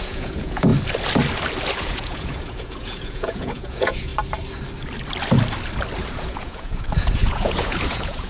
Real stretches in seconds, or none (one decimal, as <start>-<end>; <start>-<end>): 0.7-1.8; 4.1-6.1